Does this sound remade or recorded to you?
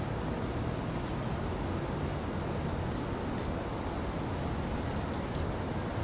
recorded